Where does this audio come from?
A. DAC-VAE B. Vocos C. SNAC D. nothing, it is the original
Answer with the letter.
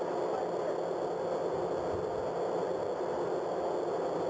D